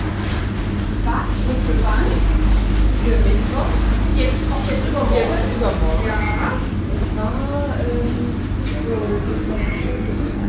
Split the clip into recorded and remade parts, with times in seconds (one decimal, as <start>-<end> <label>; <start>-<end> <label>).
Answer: 0.0-9.0 recorded; 9.0-10.5 remade